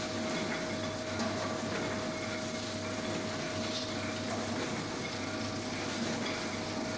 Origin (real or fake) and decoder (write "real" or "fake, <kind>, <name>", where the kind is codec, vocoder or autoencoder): real